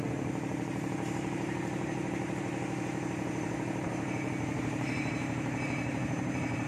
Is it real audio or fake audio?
fake